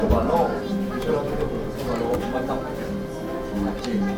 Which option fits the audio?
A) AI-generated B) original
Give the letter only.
B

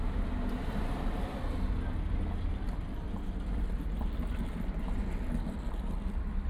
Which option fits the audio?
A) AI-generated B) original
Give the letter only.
B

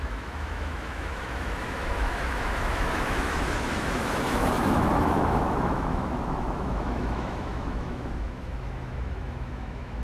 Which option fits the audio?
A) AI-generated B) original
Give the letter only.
A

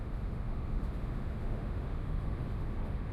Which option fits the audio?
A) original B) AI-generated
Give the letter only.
B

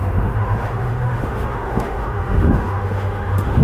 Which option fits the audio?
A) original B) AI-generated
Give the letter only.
B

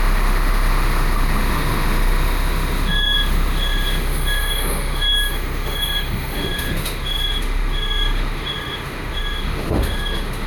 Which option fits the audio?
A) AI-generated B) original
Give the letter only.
A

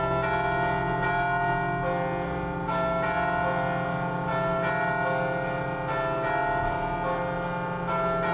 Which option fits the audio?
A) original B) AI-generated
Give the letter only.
A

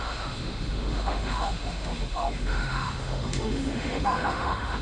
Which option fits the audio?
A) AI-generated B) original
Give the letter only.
A